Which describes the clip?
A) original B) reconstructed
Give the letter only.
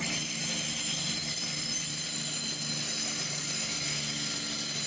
A